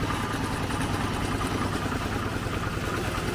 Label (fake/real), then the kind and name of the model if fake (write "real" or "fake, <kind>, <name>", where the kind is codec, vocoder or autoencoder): real